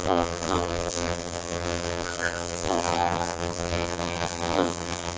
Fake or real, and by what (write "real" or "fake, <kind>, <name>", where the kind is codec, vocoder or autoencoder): fake, vocoder, BigVGAN v2